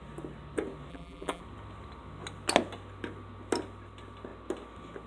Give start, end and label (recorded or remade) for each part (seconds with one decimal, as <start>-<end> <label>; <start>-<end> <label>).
0.0-0.9 recorded; 0.9-1.4 remade; 1.4-5.1 recorded